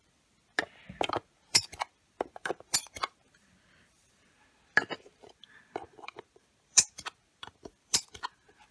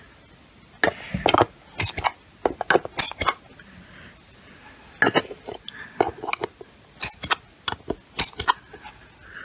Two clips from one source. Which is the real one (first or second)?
second